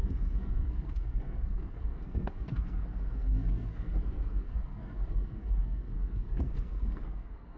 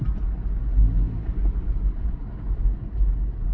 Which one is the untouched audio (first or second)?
second